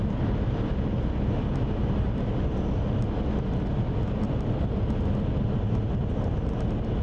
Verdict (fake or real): real